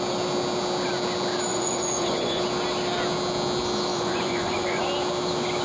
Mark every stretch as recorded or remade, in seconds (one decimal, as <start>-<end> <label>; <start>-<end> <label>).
0.0-1.5 recorded; 1.5-2.4 remade; 2.4-3.9 recorded; 3.9-4.8 remade; 4.8-5.6 recorded